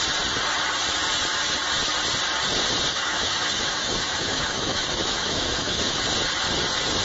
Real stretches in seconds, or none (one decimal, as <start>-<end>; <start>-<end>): 0.0-2.9; 6.0-7.0